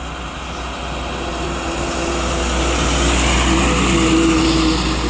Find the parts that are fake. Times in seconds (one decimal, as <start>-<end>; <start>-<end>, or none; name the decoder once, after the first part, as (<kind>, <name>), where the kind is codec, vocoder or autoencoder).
none